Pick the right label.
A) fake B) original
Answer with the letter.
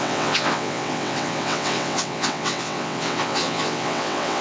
A